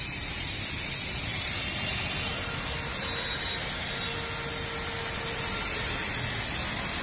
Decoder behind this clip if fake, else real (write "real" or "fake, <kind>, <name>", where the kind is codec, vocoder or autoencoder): real